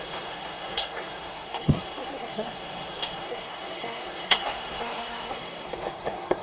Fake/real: fake